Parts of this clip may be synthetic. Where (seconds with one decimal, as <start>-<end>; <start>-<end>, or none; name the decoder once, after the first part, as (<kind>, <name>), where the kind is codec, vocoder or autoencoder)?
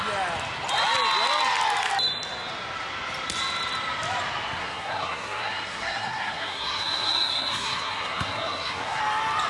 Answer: 4.6-9.0 (codec, SNAC)